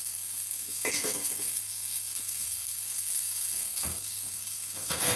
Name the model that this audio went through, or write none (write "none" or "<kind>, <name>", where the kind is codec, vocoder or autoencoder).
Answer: codec, SNAC